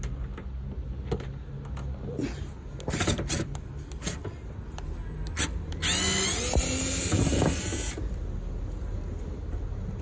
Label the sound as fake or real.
real